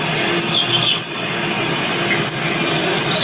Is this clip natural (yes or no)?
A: yes